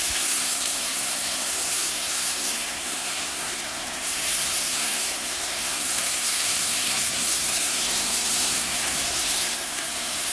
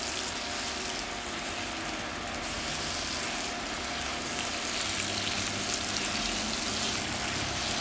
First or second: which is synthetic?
first